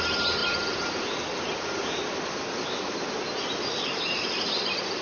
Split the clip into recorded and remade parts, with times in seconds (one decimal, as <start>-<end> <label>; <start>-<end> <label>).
0.0-5.0 recorded